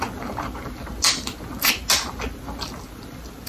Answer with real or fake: real